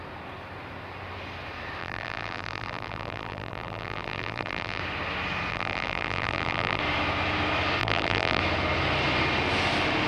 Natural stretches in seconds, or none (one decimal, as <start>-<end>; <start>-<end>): 0.0-1.8; 4.8-5.5; 6.8-7.8; 8.4-10.1

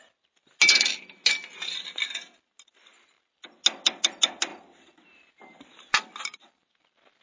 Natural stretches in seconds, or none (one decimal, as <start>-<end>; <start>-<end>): 0.0-7.2

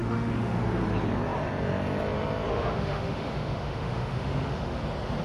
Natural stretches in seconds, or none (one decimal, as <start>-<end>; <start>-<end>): 0.6-2.5; 4.8-5.2

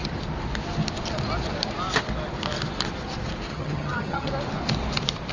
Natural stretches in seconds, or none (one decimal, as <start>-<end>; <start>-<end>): 0.0-3.5; 4.3-5.3

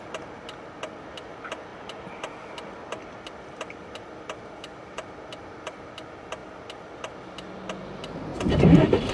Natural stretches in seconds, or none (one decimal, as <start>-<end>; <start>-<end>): 0.0-1.7; 5.9-8.3